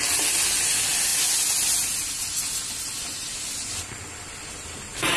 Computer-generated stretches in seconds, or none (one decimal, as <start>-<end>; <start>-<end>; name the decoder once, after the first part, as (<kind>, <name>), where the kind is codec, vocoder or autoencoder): none